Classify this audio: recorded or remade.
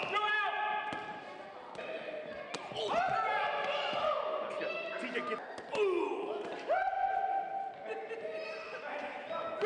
recorded